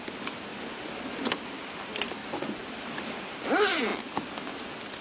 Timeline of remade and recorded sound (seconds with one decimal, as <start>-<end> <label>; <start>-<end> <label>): 0.0-5.0 recorded

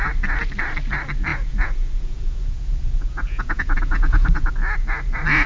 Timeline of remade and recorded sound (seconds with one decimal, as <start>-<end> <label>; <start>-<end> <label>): 0.0-1.3 recorded; 1.3-4.5 remade; 4.5-5.5 recorded

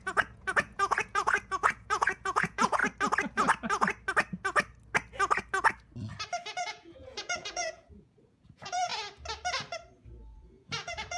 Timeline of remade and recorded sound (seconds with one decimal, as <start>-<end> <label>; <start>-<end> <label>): 0.0-2.8 remade; 2.8-6.6 recorded; 6.6-8.9 remade; 8.9-9.9 recorded; 9.9-11.2 remade

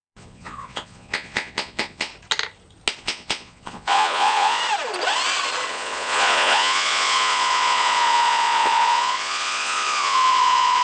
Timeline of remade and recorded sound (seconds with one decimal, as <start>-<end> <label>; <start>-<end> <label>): 0.0-2.1 remade; 2.1-3.0 recorded; 3.0-4.6 remade; 4.6-5.7 recorded; 5.7-10.8 remade

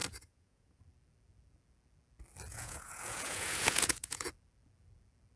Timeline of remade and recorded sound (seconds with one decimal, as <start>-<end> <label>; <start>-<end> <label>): 0.0-0.8 remade; 0.8-2.5 recorded; 2.5-4.3 remade; 4.3-5.4 recorded

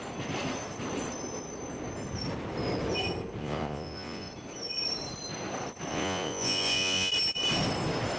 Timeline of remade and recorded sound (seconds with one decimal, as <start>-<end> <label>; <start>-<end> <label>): 0.0-3.4 recorded; 3.4-4.3 remade; 4.3-5.9 recorded; 5.9-7.1 remade; 7.1-8.2 recorded